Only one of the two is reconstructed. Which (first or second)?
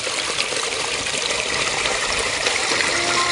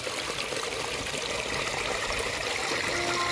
first